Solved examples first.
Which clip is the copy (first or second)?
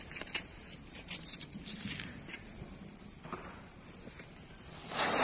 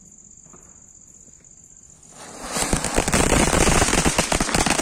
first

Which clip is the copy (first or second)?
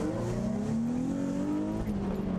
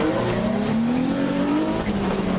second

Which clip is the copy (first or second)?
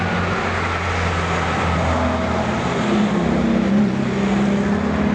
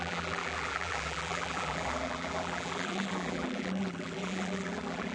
second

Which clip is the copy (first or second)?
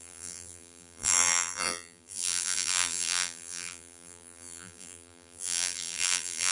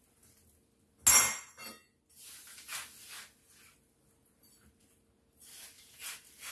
first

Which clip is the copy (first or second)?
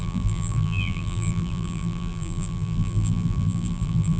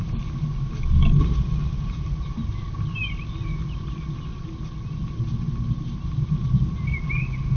first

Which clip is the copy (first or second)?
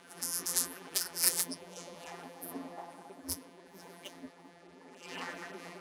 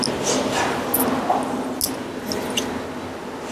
first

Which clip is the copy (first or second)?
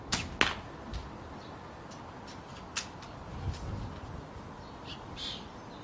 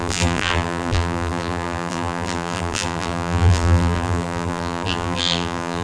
second